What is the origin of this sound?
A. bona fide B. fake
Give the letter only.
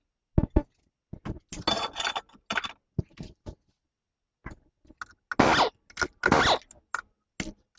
A